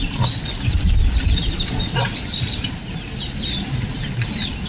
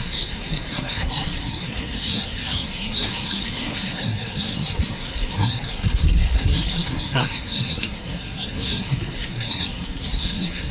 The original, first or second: first